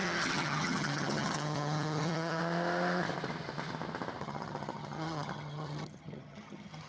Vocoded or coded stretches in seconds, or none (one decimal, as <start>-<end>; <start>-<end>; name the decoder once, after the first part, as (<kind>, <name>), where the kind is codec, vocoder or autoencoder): 0.0-2.4 (vocoder, HiFi-GAN); 4.2-6.9